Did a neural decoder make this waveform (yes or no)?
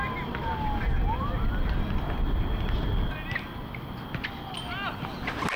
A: no